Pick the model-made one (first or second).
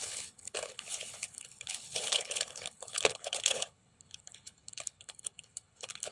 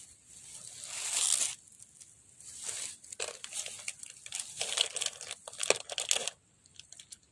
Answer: first